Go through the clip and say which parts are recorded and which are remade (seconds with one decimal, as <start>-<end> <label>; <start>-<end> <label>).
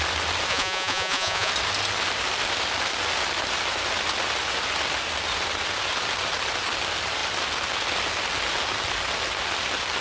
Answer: 0.0-0.5 recorded; 0.5-1.5 remade; 1.5-10.0 recorded